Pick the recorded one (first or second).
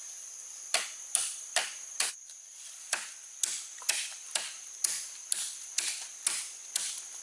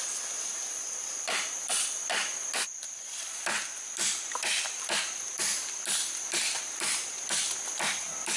second